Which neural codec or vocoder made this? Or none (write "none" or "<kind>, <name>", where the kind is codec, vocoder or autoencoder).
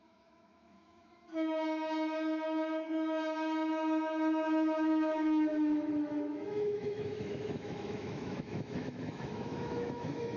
autoencoder, DAC-VAE